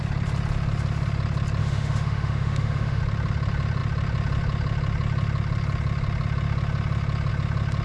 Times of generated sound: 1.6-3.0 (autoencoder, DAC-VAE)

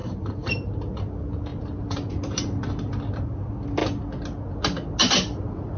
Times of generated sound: 0.0-0.7 (vocoder, BigVGAN v2); 1.5-2.1; 5.0-5.8

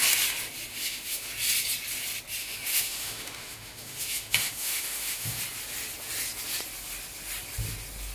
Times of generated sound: 0.7-1.3 (autoencoder, DAC-VAE); 2.4-5.4

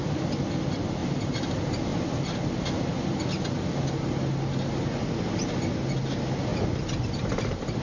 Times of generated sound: 0.0-0.5 (vocoder, BigVGAN v2); 6.5-7.8

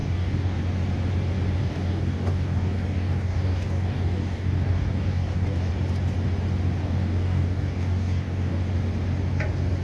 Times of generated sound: 0.0-0.6 (codec, DAC); 1.6-5.7; 6.8-8.6

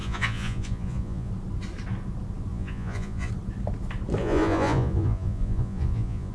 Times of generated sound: 0.0-1.3 (vocoder, Vocos); 2.5-3.3; 4.2-6.3